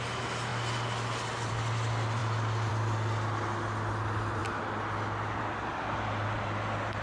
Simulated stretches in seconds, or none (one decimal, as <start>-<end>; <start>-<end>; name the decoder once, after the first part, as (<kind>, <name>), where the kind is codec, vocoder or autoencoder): none